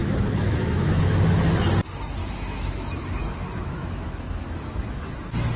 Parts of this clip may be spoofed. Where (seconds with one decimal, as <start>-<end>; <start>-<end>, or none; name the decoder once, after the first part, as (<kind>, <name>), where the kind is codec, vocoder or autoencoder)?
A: 0.0-1.3 (autoencoder, DAC-VAE); 2.2-5.1